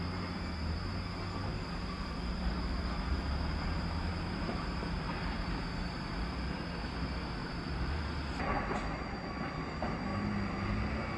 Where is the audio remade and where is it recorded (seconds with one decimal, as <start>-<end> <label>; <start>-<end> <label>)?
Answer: 0.0-1.5 recorded; 1.5-6.7 remade; 6.7-7.4 recorded; 7.4-8.1 remade; 8.1-11.2 recorded